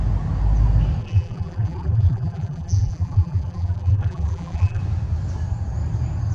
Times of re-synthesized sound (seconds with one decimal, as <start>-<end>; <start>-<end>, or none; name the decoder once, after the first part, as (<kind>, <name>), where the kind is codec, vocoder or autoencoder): 1.0-4.8 (vocoder, BigVGAN v2)